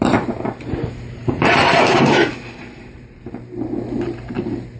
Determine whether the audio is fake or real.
fake